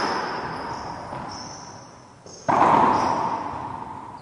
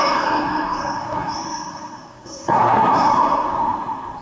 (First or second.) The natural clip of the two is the first